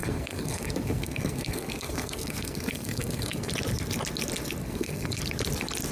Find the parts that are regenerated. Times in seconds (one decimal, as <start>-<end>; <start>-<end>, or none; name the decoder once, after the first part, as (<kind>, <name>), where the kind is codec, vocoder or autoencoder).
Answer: 0.0-3.5 (codec, SNAC); 4.6-5.2